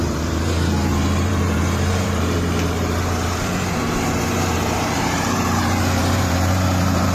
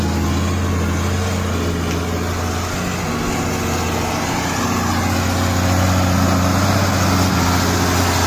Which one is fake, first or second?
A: first